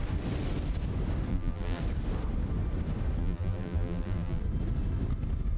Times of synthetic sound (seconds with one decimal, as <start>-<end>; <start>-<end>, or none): 1.3-1.8; 3.2-4.4